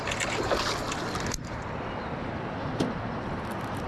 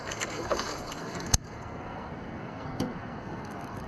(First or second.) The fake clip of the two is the second